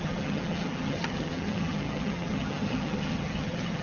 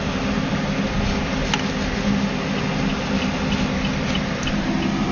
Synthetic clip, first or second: first